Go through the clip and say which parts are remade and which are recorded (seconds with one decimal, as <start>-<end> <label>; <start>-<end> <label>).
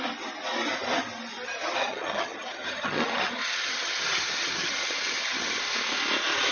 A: 0.0-1.8 recorded; 1.8-5.6 remade; 5.6-6.5 recorded